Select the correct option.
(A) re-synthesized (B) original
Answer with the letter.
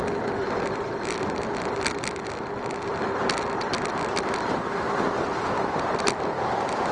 A